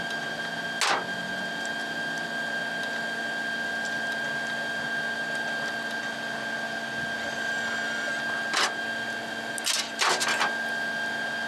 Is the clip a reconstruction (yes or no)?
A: no